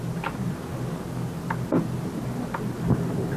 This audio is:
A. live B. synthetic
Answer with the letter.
A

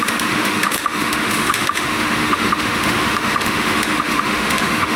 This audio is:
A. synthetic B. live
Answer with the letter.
A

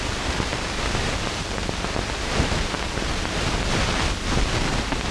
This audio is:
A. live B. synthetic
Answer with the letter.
A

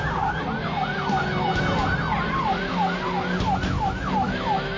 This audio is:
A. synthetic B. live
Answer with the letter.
B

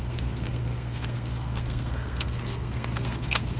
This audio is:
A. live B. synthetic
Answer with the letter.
B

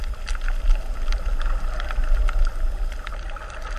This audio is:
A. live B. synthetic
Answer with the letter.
A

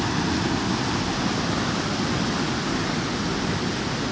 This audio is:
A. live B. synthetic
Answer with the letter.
A